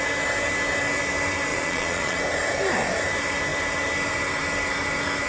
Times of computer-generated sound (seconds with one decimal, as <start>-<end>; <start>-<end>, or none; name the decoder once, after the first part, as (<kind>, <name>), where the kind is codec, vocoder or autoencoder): 1.5-2.2 (vocoder, Vocos)